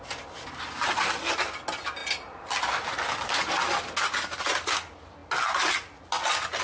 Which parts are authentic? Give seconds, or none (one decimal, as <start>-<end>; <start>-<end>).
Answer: 0.0-6.6